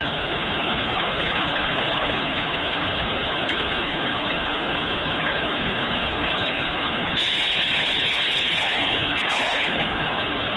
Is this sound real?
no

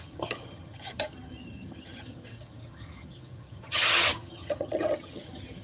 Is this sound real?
no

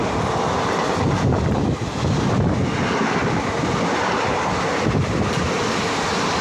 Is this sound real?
yes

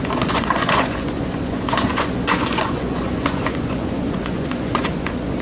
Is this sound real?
no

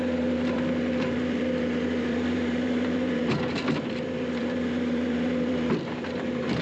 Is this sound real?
no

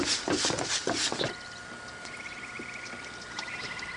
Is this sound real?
yes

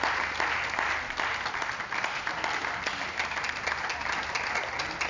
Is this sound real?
yes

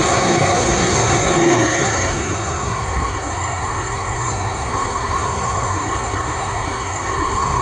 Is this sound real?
no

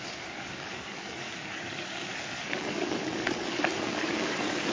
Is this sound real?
no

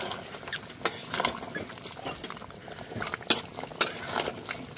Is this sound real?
yes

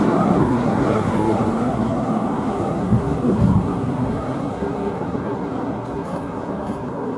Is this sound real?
no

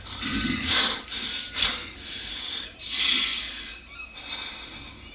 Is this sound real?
yes